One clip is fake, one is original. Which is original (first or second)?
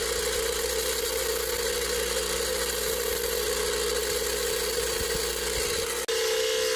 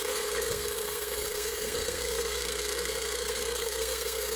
first